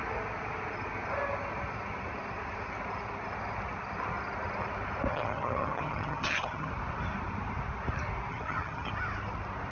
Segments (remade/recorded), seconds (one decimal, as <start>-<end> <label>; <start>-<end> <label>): 0.0-5.1 recorded; 5.1-6.7 remade; 6.7-8.3 recorded; 8.3-8.9 remade; 8.9-9.7 recorded